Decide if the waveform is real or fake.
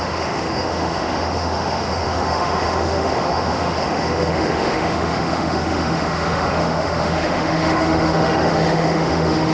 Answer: fake